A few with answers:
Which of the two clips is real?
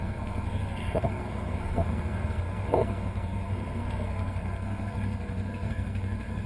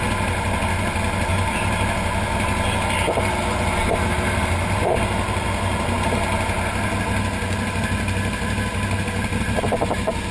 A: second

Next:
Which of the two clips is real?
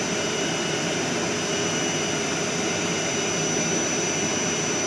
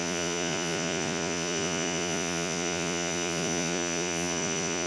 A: first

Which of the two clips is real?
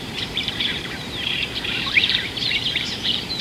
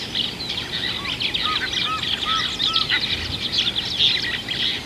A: second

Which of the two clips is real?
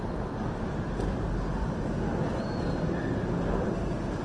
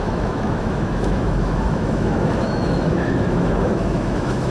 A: first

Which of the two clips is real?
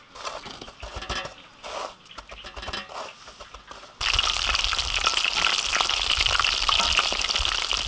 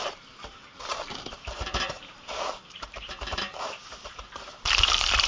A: first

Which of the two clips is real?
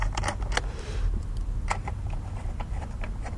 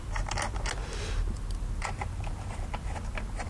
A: second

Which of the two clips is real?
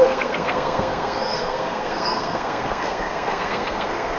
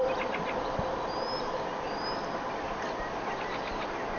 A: second